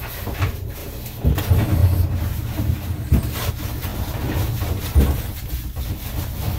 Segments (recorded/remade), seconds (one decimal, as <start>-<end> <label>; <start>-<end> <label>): 0.0-1.8 recorded; 1.8-3.5 remade; 3.5-6.6 recorded